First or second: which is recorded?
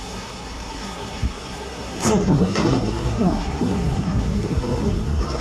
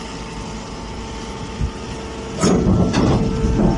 second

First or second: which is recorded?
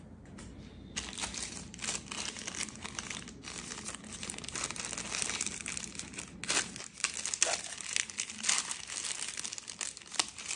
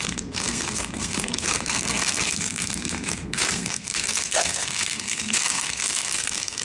first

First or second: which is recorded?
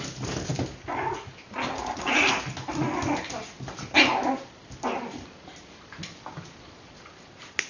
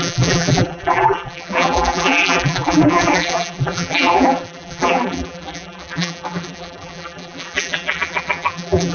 first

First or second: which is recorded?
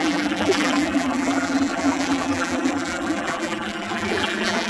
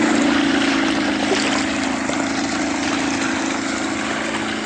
second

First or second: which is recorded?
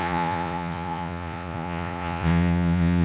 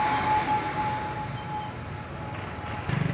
second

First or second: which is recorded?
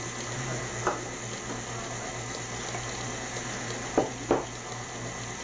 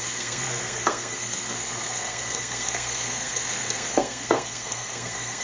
first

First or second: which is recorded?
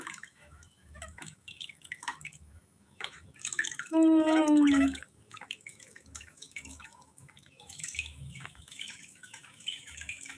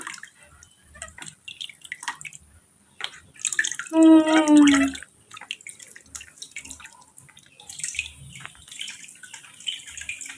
second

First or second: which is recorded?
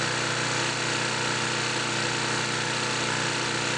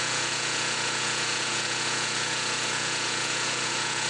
first